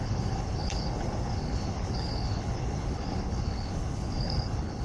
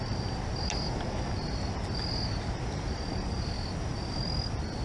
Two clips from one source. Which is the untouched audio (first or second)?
second